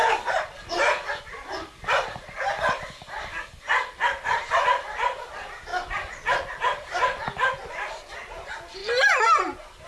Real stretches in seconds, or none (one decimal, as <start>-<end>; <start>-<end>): 5.7-7.7; 8.8-9.9